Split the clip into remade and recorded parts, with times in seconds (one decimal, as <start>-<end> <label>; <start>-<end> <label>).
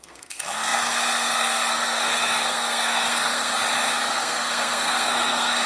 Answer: 0.0-3.5 remade; 3.5-4.1 recorded; 4.1-5.7 remade